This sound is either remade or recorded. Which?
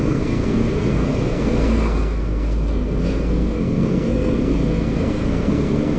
remade